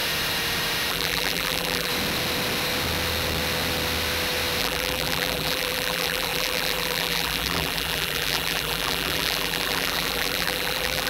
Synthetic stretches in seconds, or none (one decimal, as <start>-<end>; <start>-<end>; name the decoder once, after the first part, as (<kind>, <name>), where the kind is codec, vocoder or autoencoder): 0.9-1.9 (vocoder, BigVGAN v2); 4.6-11.1